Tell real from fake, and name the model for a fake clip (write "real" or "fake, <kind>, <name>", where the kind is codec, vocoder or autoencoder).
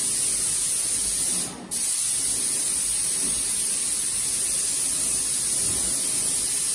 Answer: real